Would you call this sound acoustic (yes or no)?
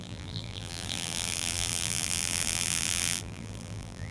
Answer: no